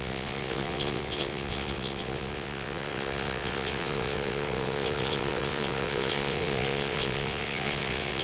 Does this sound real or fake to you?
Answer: fake